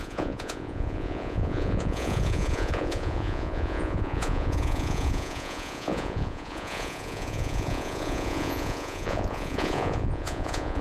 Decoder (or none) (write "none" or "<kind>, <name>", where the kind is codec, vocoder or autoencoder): vocoder, Vocos